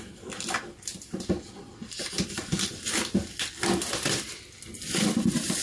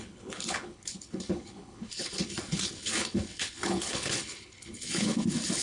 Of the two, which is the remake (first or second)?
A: second